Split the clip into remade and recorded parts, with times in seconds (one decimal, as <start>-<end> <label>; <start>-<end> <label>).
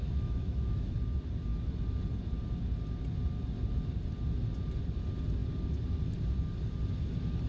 0.0-0.9 remade; 0.9-7.5 recorded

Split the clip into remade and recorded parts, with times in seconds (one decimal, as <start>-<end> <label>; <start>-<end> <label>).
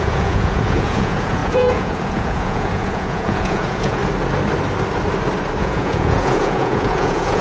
0.0-4.0 remade; 4.0-5.6 recorded; 5.6-7.4 remade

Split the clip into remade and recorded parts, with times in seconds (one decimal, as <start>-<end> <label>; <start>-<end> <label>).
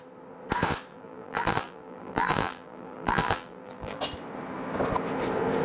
0.0-0.9 recorded; 0.9-4.0 remade; 4.0-5.6 recorded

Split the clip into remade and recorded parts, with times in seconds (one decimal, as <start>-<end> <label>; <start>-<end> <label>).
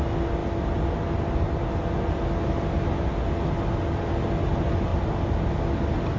0.0-6.2 recorded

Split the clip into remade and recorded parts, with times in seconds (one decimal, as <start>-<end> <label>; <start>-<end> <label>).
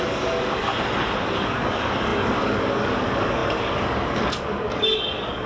0.0-0.7 remade; 0.7-1.4 recorded; 1.4-5.5 remade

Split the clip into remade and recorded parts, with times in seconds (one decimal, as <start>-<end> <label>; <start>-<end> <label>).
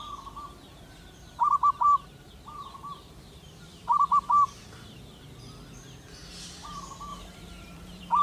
0.0-0.7 recorded; 0.7-5.0 remade; 5.0-7.1 recorded; 7.1-8.2 remade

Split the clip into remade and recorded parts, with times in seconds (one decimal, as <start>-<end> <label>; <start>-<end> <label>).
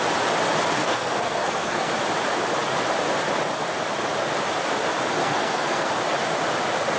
0.0-0.8 recorded; 0.8-1.9 remade; 1.9-5.2 recorded; 5.2-5.9 remade; 5.9-7.0 recorded